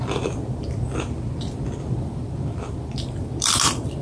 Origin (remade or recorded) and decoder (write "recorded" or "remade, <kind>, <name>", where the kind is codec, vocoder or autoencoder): remade, vocoder, BigVGAN v2